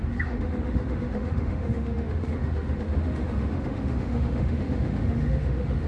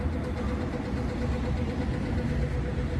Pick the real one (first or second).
second